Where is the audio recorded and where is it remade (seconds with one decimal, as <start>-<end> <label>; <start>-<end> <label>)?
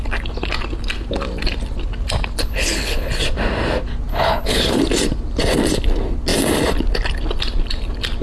0.0-2.4 recorded; 2.4-3.1 remade; 3.1-4.1 recorded; 4.1-4.8 remade; 4.8-8.2 recorded